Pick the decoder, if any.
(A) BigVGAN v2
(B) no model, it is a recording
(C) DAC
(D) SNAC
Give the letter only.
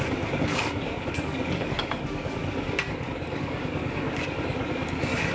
C